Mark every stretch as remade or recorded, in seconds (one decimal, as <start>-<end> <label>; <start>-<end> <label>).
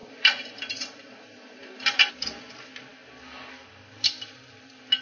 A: 0.0-2.5 remade; 2.5-5.0 recorded